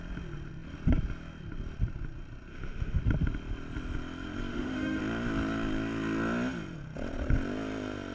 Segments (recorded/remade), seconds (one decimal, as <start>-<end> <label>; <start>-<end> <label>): 0.0-2.5 recorded; 2.5-3.0 remade; 3.0-4.5 recorded; 4.5-5.0 remade; 5.0-8.1 recorded